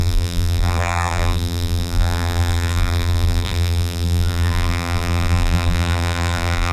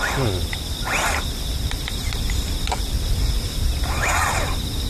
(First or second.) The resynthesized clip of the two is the first